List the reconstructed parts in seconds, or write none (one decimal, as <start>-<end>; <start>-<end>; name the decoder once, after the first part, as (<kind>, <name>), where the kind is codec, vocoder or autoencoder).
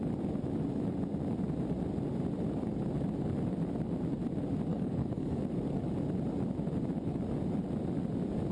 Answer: 4.7-5.4 (codec, DAC)